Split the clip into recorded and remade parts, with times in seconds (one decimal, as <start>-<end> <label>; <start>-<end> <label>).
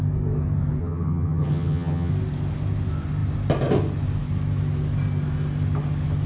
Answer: 0.0-0.8 recorded; 0.8-2.1 remade; 2.1-6.3 recorded